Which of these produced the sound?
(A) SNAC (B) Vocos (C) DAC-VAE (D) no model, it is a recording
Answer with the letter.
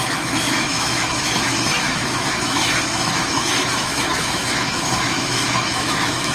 C